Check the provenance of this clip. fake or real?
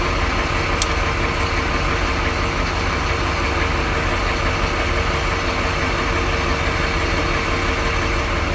real